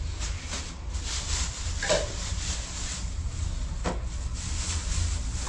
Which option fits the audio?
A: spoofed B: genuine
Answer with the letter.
B